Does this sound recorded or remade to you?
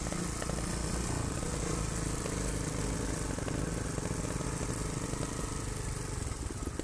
recorded